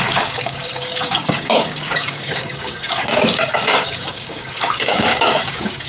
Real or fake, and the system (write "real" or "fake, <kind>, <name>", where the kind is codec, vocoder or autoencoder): fake, codec, DAC